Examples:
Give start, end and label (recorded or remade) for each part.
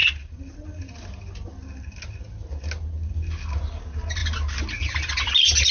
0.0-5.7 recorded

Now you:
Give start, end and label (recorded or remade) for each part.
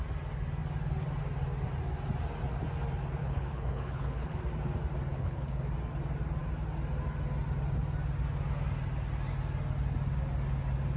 0.0-3.2 recorded; 3.2-4.4 remade; 4.4-5.1 recorded; 5.1-5.6 remade; 5.6-11.0 recorded